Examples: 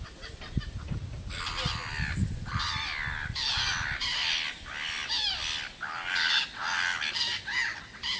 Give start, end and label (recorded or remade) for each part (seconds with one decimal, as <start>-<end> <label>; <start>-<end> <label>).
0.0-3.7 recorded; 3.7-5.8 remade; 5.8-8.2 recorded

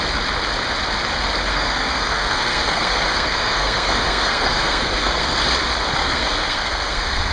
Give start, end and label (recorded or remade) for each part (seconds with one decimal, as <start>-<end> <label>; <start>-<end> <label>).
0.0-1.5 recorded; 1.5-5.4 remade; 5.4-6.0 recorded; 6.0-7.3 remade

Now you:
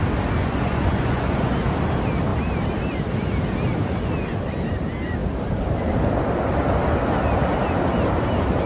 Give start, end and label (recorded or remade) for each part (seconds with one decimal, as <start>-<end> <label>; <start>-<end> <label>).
0.0-0.4 recorded; 0.4-1.5 remade; 1.5-8.7 recorded

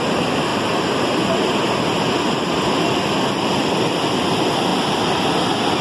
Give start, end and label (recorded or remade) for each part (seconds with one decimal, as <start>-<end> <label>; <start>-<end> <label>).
0.0-5.8 recorded

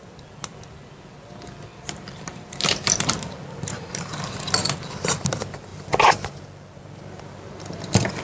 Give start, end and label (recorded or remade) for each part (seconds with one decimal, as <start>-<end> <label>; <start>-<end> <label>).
0.0-1.7 recorded; 1.7-4.2 remade; 4.2-5.7 recorded; 5.7-6.4 remade; 6.4-8.2 recorded